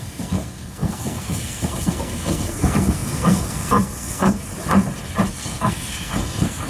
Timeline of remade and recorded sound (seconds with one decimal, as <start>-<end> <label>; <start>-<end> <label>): 0.0-4.5 remade; 4.5-5.3 recorded; 5.3-6.7 remade